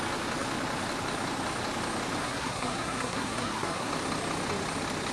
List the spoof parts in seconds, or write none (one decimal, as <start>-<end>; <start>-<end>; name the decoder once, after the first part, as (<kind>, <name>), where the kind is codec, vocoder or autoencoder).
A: 2.2-3.9 (codec, SNAC)